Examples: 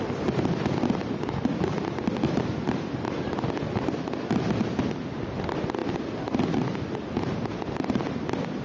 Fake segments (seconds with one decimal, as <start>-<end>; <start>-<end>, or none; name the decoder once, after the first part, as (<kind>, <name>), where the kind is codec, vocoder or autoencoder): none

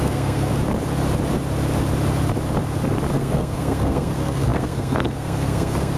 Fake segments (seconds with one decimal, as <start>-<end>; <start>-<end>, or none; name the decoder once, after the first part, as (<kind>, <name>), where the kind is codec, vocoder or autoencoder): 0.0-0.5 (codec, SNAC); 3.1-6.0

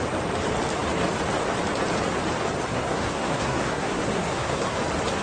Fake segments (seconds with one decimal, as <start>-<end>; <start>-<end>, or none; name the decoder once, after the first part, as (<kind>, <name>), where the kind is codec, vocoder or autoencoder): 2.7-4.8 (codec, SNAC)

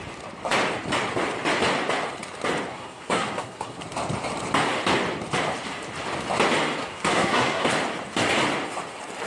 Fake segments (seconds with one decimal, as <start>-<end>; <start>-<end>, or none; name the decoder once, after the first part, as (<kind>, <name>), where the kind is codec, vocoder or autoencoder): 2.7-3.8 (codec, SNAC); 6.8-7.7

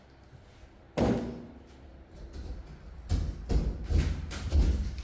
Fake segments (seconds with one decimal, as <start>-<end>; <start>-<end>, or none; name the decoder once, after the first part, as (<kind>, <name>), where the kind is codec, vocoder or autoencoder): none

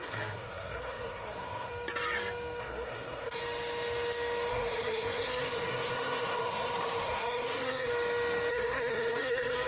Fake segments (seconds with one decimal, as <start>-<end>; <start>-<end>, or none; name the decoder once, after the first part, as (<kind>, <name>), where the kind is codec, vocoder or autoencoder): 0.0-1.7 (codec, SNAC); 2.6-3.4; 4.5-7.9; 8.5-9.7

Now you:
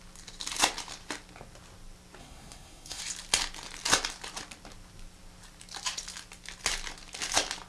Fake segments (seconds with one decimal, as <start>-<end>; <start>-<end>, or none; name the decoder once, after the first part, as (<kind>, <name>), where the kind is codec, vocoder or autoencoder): 2.2-3.0 (codec, SNAC)

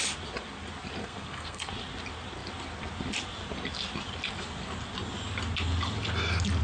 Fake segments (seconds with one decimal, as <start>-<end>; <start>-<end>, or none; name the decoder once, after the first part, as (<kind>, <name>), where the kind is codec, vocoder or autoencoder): 1.0-1.7 (codec, SNAC)